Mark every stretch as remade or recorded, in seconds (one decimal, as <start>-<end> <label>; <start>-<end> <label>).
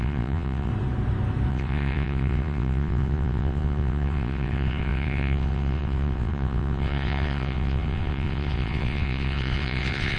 0.0-0.7 remade; 0.7-1.5 recorded; 1.5-10.2 remade